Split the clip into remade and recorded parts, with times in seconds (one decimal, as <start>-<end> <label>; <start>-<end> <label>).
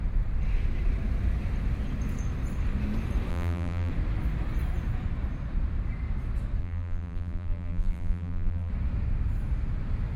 0.0-3.3 recorded; 3.3-3.9 remade; 3.9-6.6 recorded; 6.6-8.7 remade; 8.7-10.2 recorded